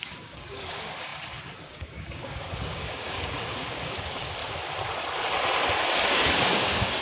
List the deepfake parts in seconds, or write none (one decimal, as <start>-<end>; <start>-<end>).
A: 0.0-4.4; 6.1-7.0